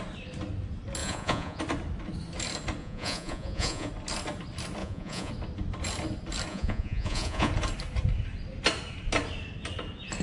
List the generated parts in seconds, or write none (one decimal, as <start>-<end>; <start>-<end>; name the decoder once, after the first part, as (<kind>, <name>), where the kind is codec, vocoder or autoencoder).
1.0-1.6 (vocoder, Vocos); 2.8-3.9; 4.8-5.3; 6.5-7.5